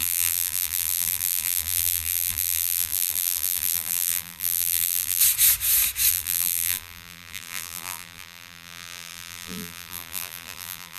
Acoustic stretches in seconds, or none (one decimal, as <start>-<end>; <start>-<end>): 5.2-6.1